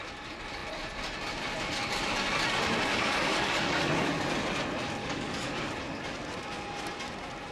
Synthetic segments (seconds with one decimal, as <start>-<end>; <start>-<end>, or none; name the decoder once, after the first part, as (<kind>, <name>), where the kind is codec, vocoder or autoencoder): 2.9-4.1 (codec, DAC); 5.0-5.7